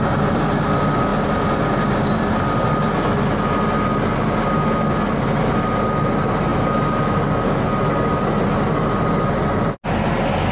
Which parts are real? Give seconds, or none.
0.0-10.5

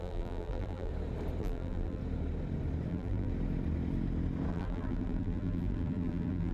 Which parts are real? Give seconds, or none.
0.9-1.4; 2.0-2.9; 3.3-4.5

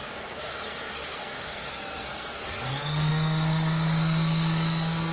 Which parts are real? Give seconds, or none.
none

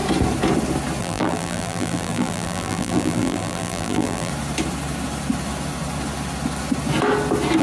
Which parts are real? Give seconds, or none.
0.0-1.0; 4.3-7.6

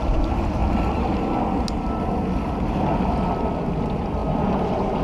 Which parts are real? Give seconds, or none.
0.0-5.0

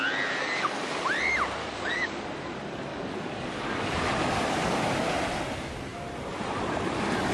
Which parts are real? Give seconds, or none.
0.0-0.4; 1.0-1.6; 2.2-2.9; 3.9-7.3

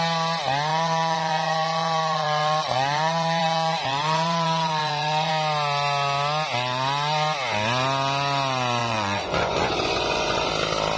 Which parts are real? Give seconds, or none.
0.0-0.7; 5.3-8.8; 10.5-11.0

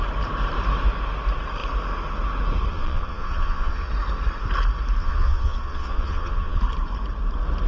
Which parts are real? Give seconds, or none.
0.0-2.7; 3.9-5.0; 6.6-7.7